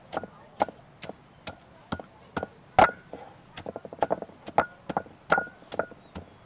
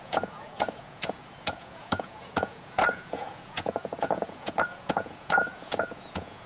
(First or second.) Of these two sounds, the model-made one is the second